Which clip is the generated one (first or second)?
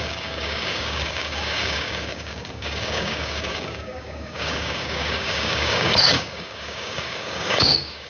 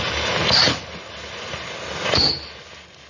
first